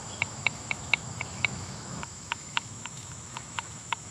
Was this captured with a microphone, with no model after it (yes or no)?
no